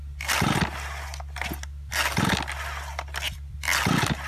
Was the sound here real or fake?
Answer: real